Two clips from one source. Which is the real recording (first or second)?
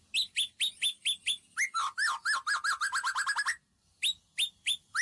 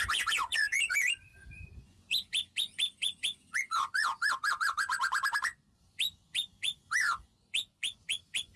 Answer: first